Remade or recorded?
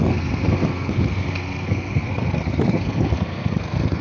remade